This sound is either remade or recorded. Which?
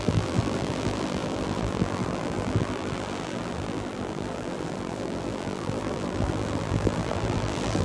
remade